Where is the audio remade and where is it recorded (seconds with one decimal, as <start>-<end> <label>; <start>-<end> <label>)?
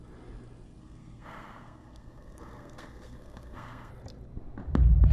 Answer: 0.0-0.8 recorded; 0.8-3.9 remade; 3.9-5.1 recorded